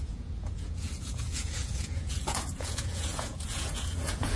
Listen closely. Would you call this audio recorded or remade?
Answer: remade